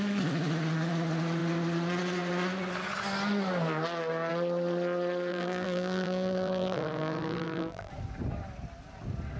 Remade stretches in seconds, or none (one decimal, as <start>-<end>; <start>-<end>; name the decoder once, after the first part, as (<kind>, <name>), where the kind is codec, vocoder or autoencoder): 5.3-7.9 (vocoder, BigVGAN v2)